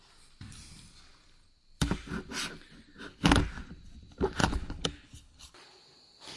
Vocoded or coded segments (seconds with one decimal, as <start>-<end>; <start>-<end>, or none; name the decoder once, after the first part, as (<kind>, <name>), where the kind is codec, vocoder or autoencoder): 4.4-5.5 (codec, HILCodec)